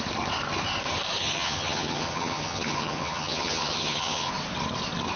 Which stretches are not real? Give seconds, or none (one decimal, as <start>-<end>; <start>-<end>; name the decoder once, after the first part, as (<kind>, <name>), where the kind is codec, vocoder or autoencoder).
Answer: 1.2-4.3 (vocoder, HiFi-GAN)